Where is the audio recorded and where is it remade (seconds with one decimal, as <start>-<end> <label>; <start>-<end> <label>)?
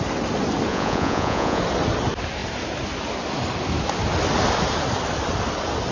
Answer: 0.0-0.7 recorded; 0.7-1.6 remade; 1.6-5.9 recorded